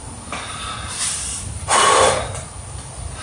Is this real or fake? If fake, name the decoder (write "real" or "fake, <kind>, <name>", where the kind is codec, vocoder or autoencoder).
fake, vocoder, BigVGAN v2